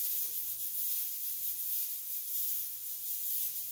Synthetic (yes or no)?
no